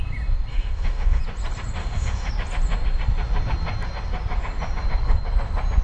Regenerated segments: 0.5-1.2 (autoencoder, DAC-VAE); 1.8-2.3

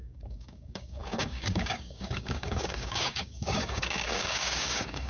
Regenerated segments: 0.0-5.1 (codec, DAC)

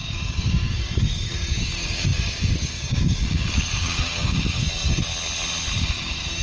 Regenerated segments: 0.0-5.1 (codec, DAC); 5.9-6.4

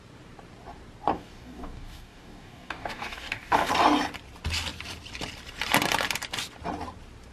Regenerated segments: 1.1-3.7 (codec, DAC)

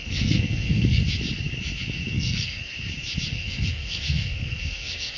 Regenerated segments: 0.0-1.0 (codec, SNAC); 2.1-2.7; 3.3-5.2